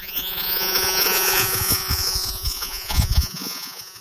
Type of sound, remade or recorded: remade